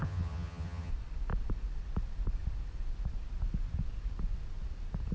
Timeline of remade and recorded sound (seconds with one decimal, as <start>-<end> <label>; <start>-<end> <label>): 0.0-0.9 remade; 0.9-5.1 recorded